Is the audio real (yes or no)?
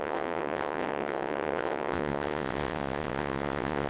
no